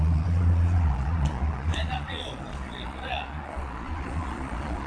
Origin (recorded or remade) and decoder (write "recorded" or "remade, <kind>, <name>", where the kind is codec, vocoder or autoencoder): remade, vocoder, Vocos